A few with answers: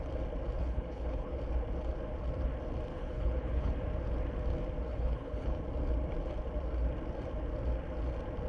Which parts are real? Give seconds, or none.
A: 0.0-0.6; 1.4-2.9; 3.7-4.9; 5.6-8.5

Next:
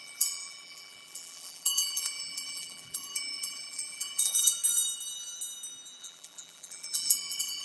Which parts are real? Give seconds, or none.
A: 4.6-6.0

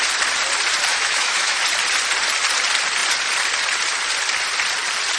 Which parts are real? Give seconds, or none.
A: 0.0-0.9; 1.6-5.2

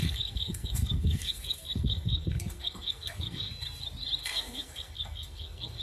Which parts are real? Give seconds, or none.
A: 3.5-4.2

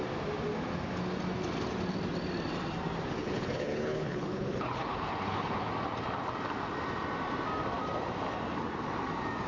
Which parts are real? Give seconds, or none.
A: 0.0-3.2; 5.7-9.5

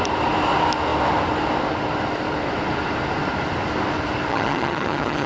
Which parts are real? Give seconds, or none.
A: 0.0-4.3

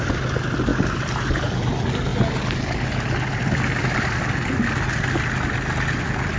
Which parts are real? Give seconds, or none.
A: 0.0-6.4